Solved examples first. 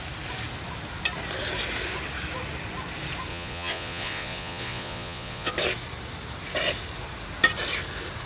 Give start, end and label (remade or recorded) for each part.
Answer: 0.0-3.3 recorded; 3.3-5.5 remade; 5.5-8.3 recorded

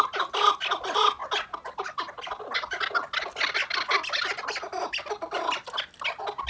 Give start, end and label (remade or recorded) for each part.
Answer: 0.0-6.5 recorded

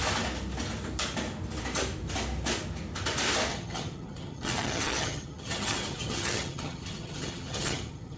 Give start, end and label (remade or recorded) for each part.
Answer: 0.0-3.5 recorded; 3.5-8.2 remade

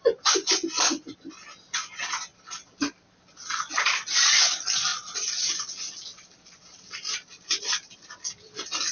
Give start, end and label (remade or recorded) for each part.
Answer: 0.0-2.3 recorded; 2.3-4.4 remade; 4.4-4.9 recorded; 4.9-5.6 remade; 5.6-6.1 recorded; 6.1-7.9 remade; 7.9-8.9 recorded